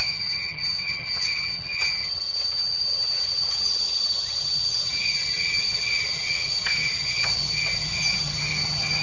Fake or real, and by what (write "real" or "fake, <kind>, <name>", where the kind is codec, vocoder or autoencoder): fake, vocoder, HiFi-GAN